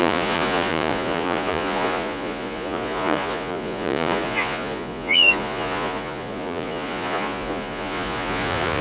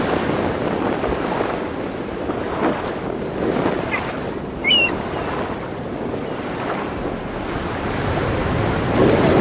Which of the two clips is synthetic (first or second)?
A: first